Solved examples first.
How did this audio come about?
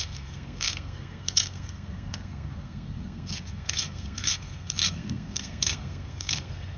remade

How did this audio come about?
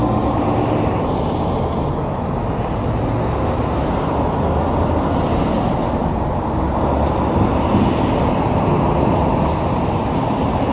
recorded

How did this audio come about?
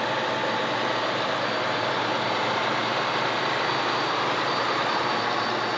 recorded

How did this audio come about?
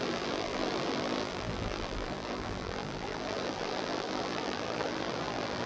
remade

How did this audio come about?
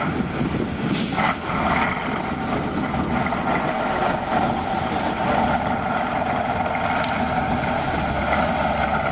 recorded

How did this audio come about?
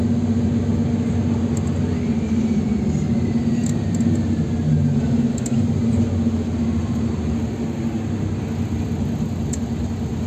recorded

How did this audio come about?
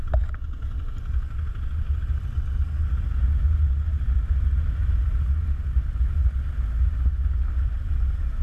recorded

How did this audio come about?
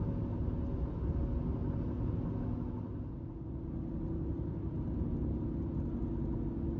recorded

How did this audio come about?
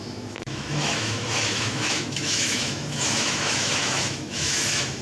remade